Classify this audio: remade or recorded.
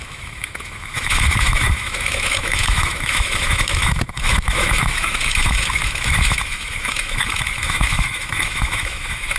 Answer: remade